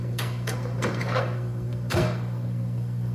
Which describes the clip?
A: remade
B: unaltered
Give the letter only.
A